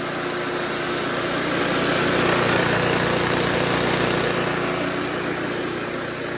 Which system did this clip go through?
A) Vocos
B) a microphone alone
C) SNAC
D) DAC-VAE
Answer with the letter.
B